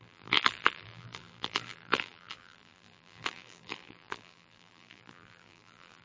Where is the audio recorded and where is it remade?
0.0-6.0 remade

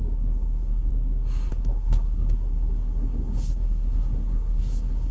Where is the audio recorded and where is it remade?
0.0-0.9 remade; 0.9-1.5 recorded; 1.5-5.1 remade